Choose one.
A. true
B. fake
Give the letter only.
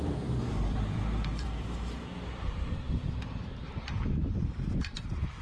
B